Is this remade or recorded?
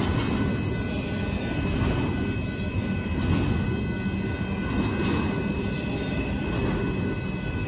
recorded